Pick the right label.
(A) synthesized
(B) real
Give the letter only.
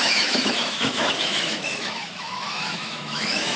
A